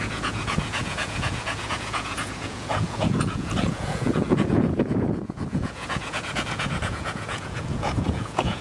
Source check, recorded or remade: remade